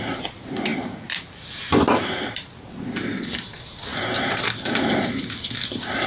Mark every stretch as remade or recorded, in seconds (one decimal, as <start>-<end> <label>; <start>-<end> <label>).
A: 0.0-0.7 recorded; 0.7-2.7 remade; 2.7-6.1 recorded